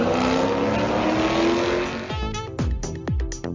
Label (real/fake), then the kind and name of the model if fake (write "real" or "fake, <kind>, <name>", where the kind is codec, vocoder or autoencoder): real